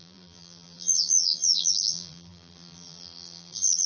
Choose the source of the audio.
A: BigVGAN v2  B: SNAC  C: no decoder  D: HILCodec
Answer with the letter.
A